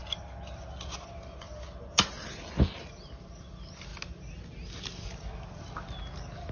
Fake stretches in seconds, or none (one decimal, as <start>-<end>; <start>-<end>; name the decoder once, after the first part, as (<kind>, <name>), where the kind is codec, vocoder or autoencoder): none